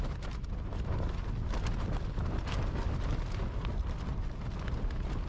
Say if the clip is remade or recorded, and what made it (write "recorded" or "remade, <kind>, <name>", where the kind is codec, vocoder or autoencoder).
recorded